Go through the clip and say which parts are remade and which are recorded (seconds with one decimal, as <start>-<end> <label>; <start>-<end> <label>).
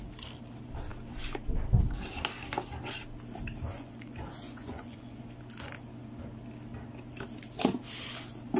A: 0.0-3.7 recorded; 3.7-5.2 remade; 5.2-8.6 recorded